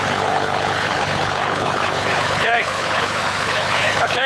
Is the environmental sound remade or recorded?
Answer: remade